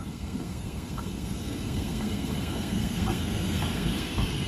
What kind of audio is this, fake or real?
fake